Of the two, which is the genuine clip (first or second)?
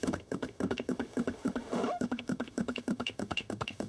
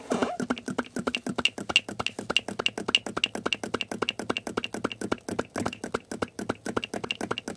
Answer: second